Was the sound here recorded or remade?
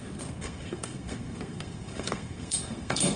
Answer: remade